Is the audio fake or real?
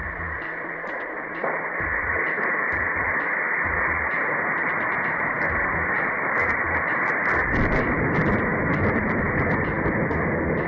fake